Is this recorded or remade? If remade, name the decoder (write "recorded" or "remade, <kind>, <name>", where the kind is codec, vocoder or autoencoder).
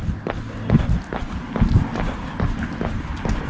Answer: recorded